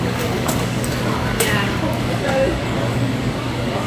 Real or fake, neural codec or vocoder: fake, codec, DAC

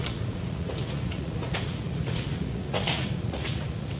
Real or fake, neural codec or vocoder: fake, vocoder, Vocos